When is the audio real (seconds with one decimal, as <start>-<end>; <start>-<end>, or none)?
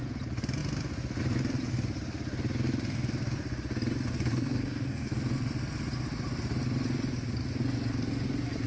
0.0-4.3; 5.2-8.7